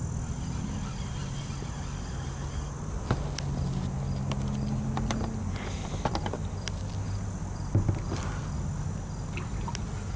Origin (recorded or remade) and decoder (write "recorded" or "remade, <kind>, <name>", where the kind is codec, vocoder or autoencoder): recorded